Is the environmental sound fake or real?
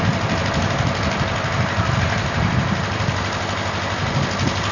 real